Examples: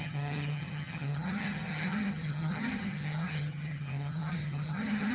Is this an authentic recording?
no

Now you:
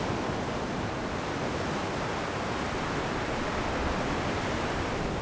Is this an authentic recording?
yes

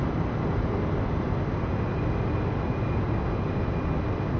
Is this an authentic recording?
yes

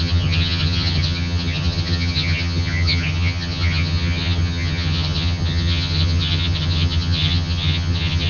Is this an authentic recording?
no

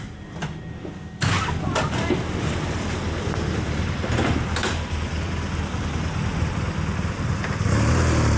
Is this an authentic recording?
yes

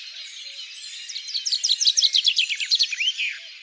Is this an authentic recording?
yes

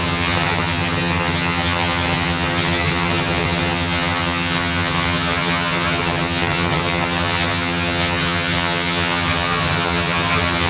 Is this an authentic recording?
no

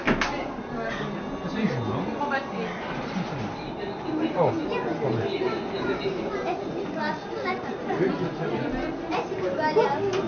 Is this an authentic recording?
yes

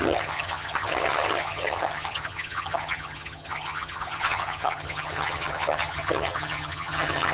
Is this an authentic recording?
no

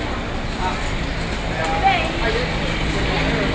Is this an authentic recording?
yes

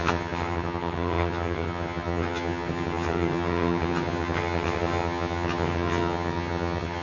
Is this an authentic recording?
no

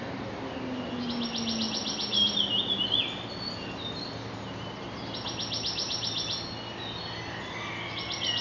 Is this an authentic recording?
yes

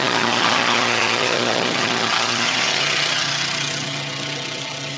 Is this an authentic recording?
no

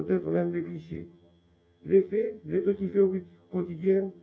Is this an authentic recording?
no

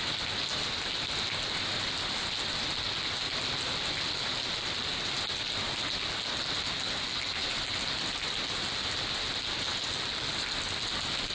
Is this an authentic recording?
yes